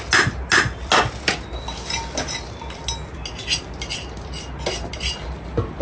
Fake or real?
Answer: real